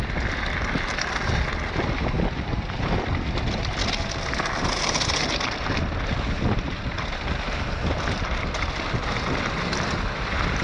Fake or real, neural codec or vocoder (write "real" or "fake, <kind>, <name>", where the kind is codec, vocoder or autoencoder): real